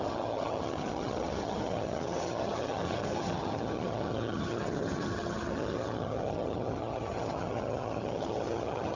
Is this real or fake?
fake